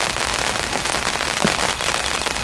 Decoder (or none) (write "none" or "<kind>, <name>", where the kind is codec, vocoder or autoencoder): none